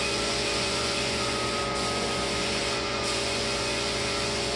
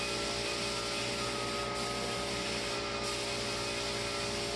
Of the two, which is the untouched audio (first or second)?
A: second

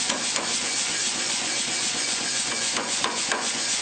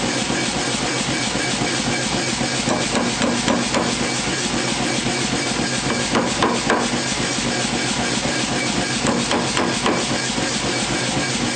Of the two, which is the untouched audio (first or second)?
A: second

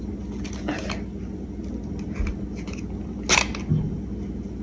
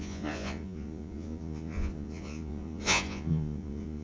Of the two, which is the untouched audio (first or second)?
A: first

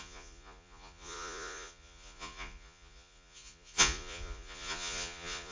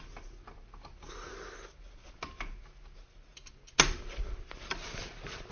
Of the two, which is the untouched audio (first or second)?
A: second